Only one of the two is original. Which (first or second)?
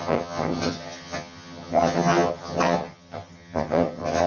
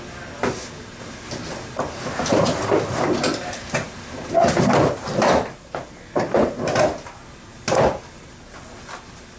second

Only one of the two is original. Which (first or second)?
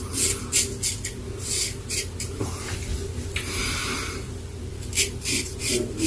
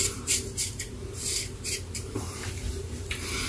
first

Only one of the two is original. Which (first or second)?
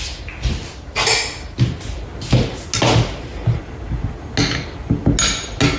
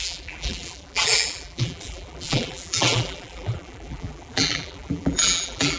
first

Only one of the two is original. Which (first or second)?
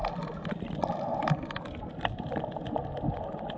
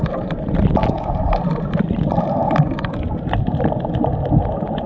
first